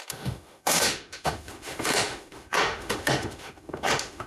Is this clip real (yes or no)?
no